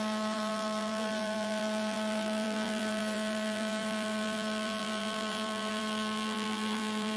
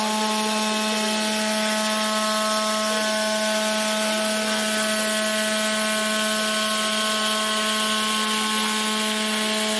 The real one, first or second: second